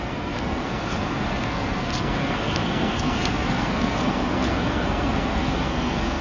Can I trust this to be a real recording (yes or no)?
no